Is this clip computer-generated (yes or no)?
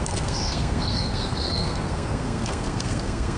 yes